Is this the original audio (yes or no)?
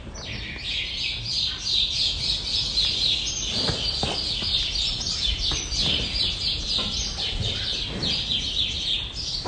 yes